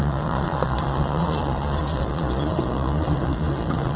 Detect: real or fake fake